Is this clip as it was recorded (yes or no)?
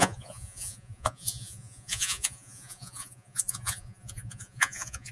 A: no